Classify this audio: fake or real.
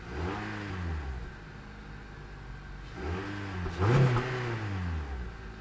real